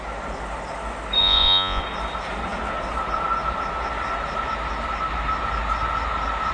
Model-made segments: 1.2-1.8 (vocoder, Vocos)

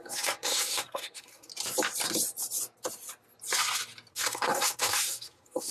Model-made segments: 0.0-1.5 (codec, SNAC); 4.1-5.7